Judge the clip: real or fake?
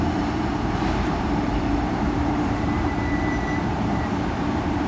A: fake